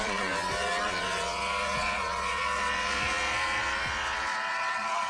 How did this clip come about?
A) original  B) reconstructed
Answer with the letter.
B